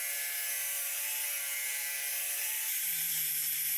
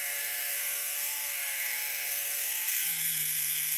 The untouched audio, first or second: first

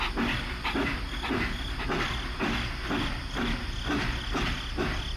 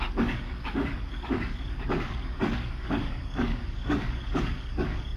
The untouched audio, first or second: first